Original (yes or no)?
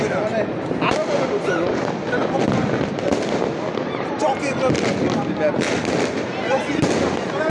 yes